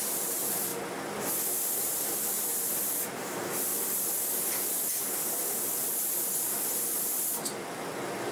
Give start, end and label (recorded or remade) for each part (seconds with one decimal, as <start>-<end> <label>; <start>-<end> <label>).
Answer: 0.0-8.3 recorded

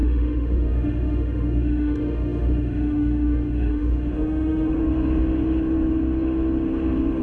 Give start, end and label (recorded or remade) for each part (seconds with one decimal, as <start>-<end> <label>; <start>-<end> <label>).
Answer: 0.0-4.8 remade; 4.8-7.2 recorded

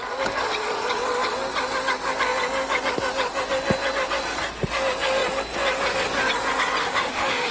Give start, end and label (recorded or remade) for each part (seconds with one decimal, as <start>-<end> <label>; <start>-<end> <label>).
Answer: 0.0-6.8 recorded; 6.8-7.5 remade

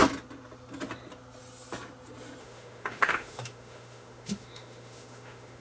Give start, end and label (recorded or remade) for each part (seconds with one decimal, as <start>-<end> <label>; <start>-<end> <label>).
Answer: 0.0-2.4 recorded; 2.4-5.6 remade

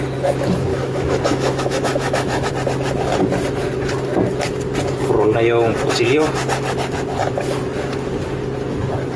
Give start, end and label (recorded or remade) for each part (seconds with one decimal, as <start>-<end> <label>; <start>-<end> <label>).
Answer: 0.0-0.7 recorded; 0.7-2.5 remade; 2.5-9.2 recorded